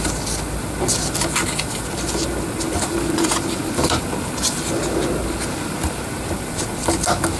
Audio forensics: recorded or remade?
recorded